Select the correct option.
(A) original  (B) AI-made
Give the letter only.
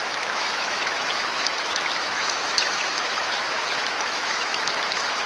B